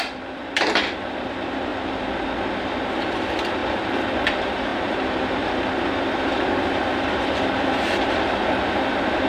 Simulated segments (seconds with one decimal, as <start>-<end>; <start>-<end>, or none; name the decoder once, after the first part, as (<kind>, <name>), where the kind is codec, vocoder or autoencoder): 0.0-1.7 (vocoder, BigVGAN v2); 2.6-3.6; 4.2-9.3